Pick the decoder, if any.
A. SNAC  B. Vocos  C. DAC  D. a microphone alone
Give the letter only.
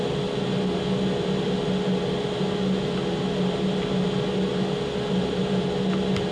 D